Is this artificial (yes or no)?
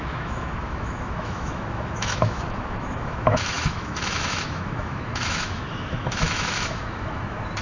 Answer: yes